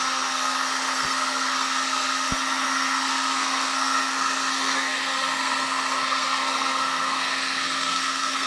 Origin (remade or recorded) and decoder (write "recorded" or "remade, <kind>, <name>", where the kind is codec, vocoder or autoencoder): remade, codec, SNAC